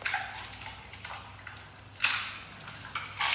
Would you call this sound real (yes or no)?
yes